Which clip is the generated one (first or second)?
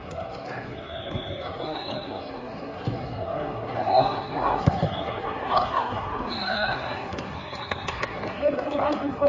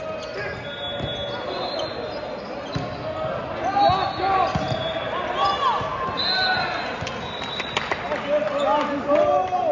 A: first